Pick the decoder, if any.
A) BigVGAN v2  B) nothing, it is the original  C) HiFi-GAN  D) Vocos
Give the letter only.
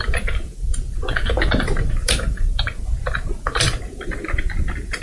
A